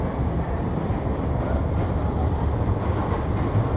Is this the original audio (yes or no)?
no